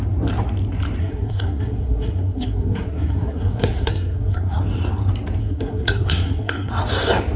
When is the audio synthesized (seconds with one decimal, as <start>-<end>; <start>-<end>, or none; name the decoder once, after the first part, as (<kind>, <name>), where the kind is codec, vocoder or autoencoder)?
1.0-4.6 (codec, SNAC); 5.4-6.7

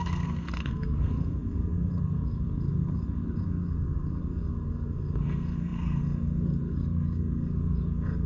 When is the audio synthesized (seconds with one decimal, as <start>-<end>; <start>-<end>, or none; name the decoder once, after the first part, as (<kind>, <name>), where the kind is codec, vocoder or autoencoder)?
0.0-8.3 (codec, SNAC)